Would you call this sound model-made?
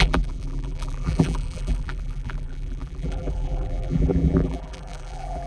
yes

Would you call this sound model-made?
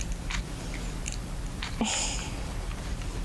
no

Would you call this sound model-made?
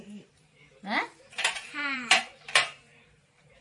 yes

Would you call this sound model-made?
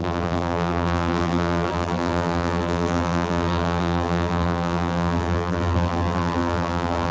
yes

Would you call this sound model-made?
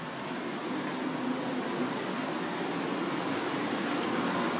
no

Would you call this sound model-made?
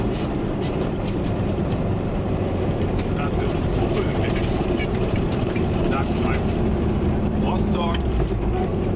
yes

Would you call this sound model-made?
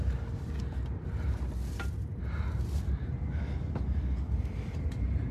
no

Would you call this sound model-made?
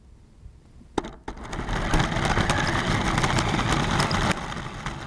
no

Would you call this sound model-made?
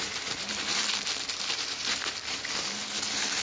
yes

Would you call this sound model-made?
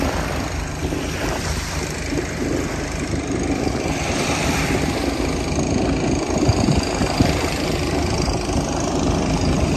yes